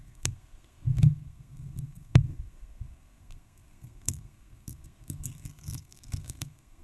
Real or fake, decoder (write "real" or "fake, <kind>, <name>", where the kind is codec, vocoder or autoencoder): fake, codec, SNAC